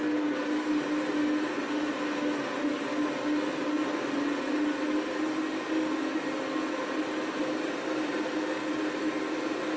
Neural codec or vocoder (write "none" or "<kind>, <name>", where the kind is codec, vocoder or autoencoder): none